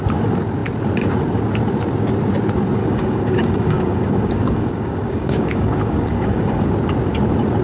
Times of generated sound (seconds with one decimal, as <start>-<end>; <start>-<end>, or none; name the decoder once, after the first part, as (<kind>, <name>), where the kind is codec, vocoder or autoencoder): 2.8-6.7 (codec, DAC)

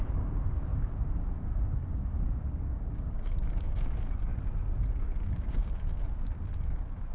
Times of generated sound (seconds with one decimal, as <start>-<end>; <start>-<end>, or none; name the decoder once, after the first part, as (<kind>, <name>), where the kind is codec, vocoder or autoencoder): 0.0-4.3 (codec, DAC); 5.5-7.1

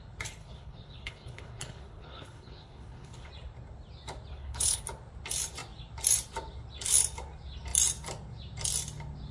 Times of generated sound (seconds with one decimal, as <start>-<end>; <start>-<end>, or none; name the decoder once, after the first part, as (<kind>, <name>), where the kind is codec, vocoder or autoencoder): 0.4-3.3 (codec, HILCodec); 4.3-4.8

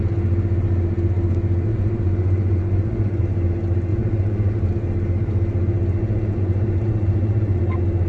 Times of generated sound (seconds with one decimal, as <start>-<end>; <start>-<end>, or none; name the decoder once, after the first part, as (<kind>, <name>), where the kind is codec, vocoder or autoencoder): 1.7-3.2 (vocoder, Vocos); 3.9-4.5; 6.0-7.6

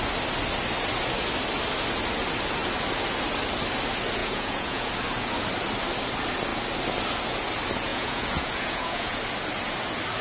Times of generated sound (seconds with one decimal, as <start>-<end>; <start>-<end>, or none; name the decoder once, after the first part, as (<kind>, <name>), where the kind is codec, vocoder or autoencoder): 4.2-4.9 (vocoder, Vocos); 7.9-9.2

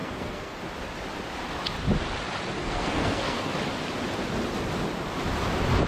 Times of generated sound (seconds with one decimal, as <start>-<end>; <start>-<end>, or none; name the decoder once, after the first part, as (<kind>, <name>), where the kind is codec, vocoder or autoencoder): 0.0-0.6 (codec, SNAC); 2.6-3.5

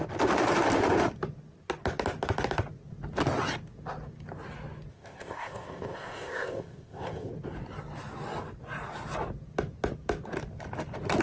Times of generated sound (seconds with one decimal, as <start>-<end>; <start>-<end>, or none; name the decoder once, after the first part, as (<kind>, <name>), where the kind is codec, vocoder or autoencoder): 4.9-7.3 (codec, ZipCodec)